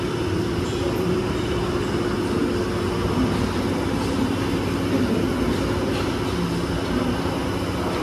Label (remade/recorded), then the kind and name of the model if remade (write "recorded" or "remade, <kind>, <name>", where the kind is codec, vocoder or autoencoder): recorded